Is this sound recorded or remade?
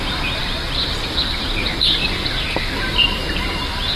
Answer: recorded